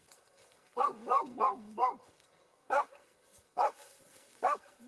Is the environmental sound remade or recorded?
remade